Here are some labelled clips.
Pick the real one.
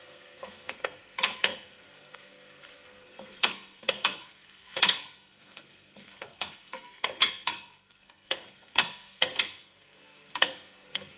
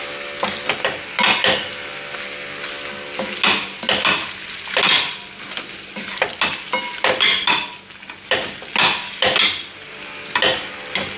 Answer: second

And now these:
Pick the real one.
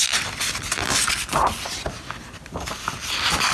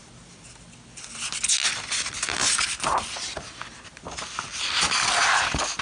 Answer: second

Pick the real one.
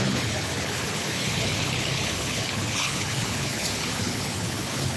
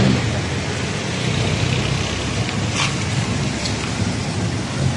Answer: second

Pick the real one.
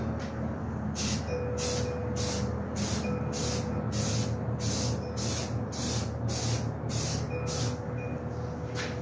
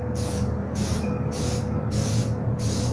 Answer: first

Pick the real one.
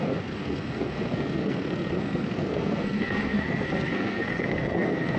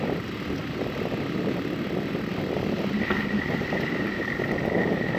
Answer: second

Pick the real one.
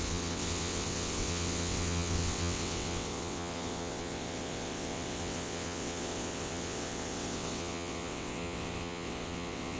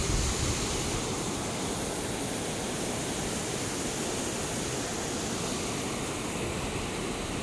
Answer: second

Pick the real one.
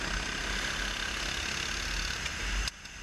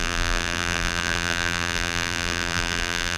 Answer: first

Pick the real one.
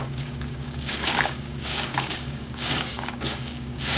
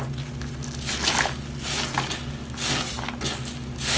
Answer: second